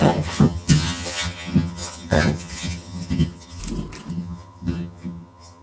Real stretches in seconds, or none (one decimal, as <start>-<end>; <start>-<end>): 3.6-4.1